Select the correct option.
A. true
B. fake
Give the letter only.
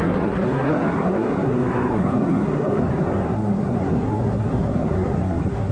B